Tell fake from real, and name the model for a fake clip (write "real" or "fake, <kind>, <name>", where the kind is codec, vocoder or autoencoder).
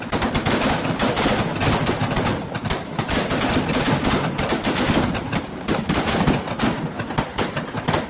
real